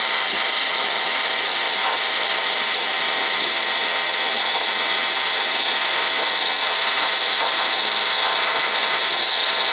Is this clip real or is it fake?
fake